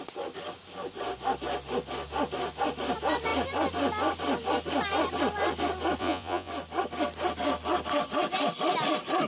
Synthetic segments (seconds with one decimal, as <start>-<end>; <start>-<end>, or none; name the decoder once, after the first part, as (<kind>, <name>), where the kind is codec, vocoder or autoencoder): 6.0-6.5 (vocoder, Vocos)